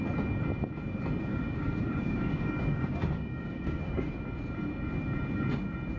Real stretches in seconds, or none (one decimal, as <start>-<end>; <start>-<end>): 0.0-1.3; 4.2-6.0